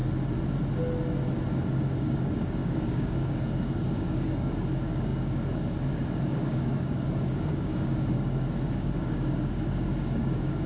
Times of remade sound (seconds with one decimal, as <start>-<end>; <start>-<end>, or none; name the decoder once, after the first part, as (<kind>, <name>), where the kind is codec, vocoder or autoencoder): 1.7-10.7 (codec, DAC)